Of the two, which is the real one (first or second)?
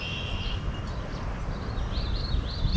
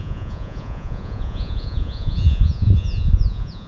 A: first